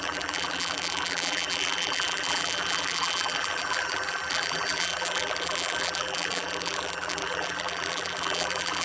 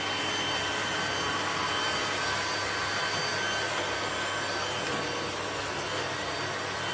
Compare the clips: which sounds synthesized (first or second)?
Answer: first